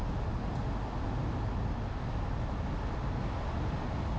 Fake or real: real